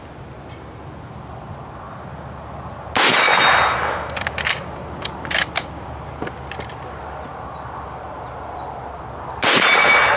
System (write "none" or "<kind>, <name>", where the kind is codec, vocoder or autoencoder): none